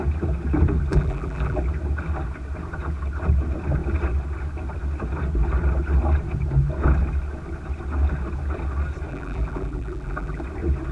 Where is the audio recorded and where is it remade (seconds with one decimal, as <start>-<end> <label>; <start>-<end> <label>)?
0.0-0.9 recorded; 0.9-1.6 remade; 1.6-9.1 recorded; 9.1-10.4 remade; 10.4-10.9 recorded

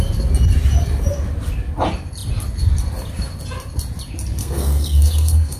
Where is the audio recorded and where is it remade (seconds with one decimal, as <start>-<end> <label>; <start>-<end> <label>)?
0.0-4.4 recorded; 4.4-5.6 remade

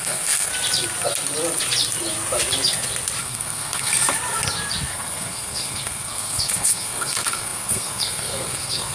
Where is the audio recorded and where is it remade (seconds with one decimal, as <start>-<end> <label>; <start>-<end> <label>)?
0.0-0.5 remade; 0.5-3.2 recorded; 3.2-3.9 remade; 3.9-4.9 recorded; 4.9-8.9 remade